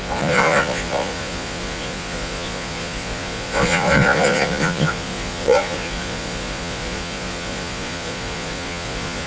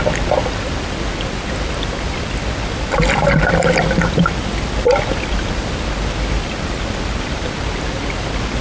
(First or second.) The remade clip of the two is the first